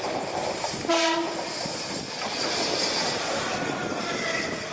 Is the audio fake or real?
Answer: real